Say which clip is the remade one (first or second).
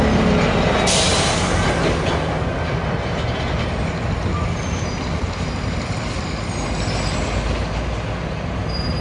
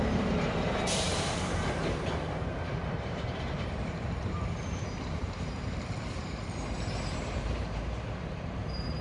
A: second